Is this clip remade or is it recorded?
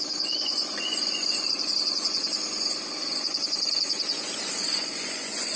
remade